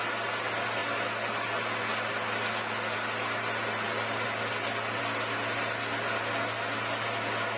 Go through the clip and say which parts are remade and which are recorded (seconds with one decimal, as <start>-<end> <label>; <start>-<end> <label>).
0.0-7.6 recorded